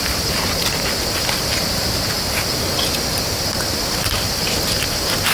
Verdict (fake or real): real